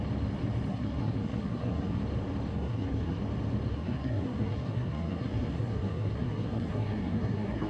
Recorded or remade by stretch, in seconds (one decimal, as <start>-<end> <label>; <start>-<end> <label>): 0.0-0.7 recorded; 0.7-2.0 remade; 2.0-2.5 recorded; 2.5-3.2 remade; 3.2-3.7 recorded; 3.7-7.7 remade